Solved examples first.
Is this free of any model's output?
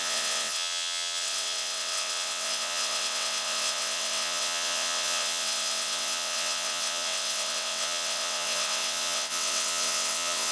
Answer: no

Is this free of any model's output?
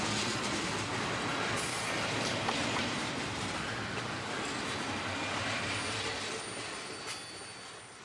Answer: yes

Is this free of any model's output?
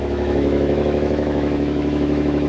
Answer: no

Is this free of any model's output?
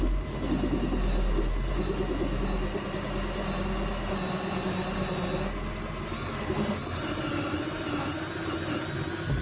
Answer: yes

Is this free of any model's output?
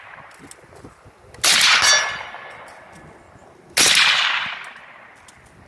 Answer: yes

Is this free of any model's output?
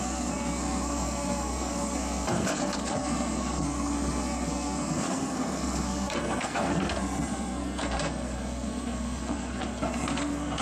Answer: no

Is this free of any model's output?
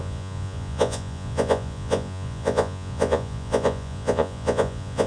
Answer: no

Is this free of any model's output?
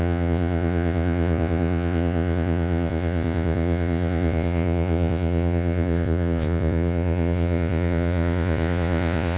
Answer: no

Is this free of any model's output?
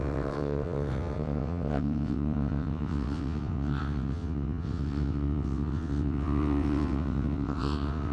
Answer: no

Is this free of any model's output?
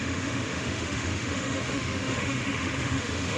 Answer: no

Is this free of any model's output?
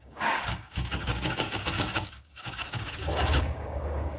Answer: no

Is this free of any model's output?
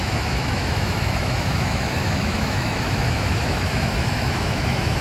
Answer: no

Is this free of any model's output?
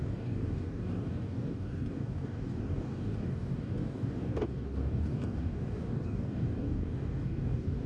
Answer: no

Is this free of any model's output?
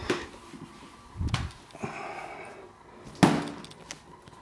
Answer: yes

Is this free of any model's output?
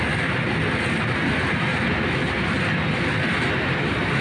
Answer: yes